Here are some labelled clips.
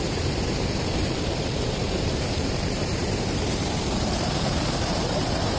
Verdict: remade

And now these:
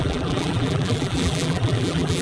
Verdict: remade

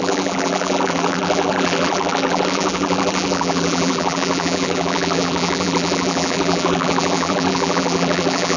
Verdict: remade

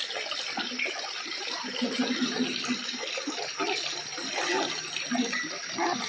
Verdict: recorded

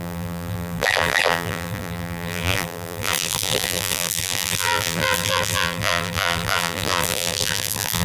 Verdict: remade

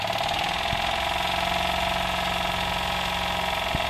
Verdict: recorded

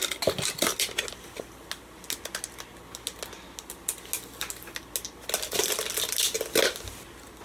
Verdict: recorded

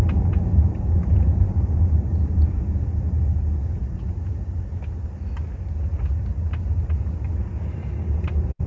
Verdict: recorded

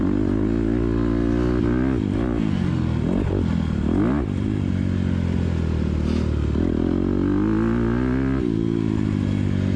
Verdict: recorded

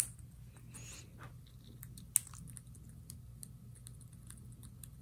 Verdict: recorded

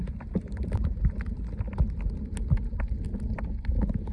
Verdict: recorded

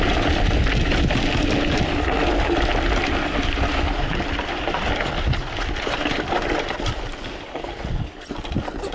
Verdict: recorded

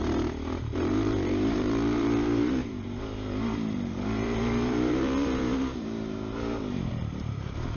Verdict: remade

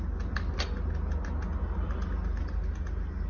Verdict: recorded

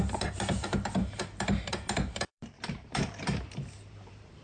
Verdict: remade